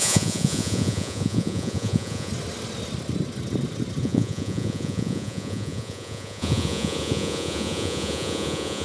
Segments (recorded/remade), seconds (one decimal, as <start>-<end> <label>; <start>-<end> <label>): 0.0-2.3 remade; 2.3-4.0 recorded; 4.0-8.8 remade